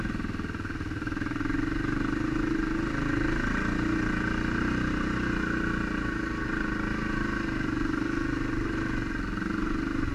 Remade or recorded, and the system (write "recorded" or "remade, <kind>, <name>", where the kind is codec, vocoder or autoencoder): recorded